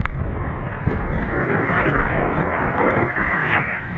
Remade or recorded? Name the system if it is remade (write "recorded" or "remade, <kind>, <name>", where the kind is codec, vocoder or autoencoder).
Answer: remade, codec, DAC